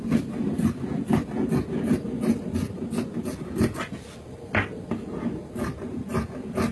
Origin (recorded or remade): recorded